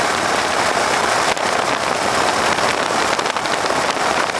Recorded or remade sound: recorded